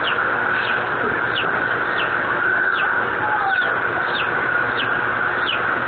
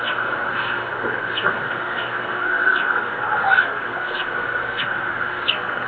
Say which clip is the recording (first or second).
first